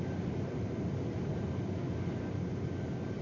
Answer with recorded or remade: recorded